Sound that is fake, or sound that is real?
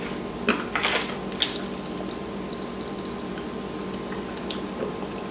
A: real